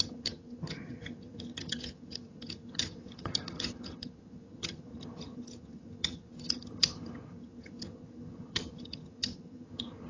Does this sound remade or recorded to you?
remade